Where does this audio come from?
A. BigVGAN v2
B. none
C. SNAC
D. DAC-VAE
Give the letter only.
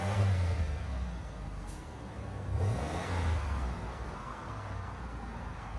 C